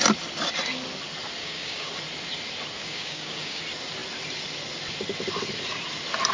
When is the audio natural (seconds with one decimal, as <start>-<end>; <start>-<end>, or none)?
0.0-1.4; 1.9-2.8; 3.6-6.3